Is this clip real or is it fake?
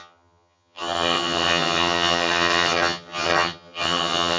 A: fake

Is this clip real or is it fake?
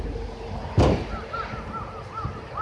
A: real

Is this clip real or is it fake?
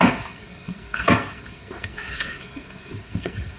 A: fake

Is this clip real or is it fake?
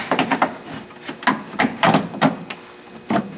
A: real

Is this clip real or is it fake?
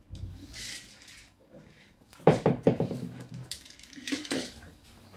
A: fake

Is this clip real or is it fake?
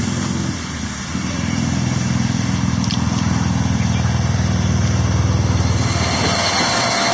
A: real